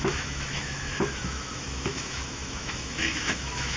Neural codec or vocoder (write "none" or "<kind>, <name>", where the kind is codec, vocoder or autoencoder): autoencoder, DAC-VAE